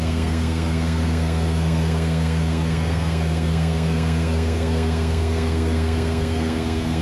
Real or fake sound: fake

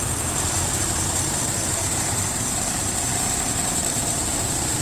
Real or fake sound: fake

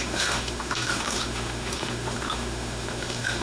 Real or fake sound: fake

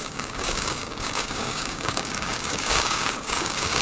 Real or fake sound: fake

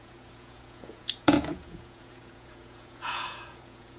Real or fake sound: fake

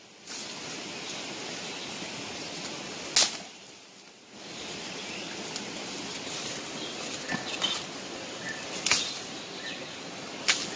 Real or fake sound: real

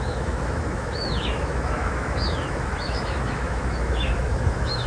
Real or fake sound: fake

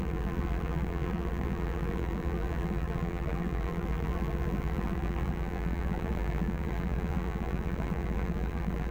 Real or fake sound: fake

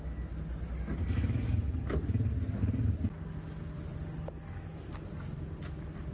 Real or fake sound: real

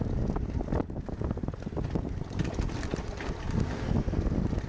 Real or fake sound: real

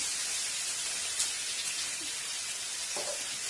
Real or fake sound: real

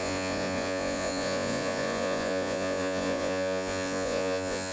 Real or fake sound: fake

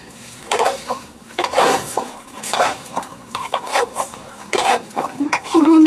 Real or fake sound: fake